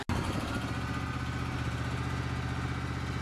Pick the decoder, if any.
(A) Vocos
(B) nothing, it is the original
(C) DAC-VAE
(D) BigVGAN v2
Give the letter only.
B